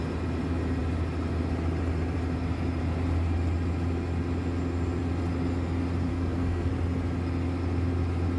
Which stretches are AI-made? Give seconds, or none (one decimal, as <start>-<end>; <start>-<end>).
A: 6.1-6.7